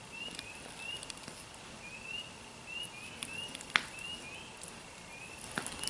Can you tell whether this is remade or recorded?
recorded